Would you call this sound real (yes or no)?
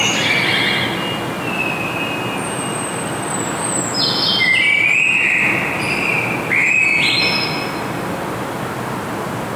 yes